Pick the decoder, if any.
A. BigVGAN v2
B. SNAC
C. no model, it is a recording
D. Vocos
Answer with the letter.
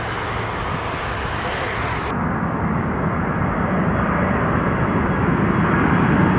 C